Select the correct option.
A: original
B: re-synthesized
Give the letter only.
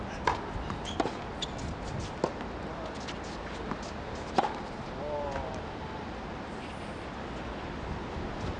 A